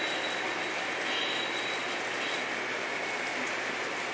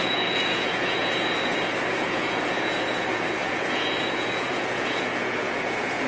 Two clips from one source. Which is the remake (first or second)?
second